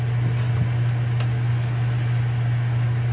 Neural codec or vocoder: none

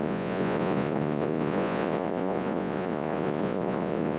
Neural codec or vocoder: vocoder, Vocos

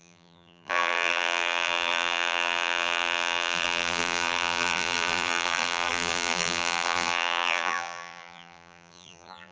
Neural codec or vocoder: vocoder, BigVGAN v2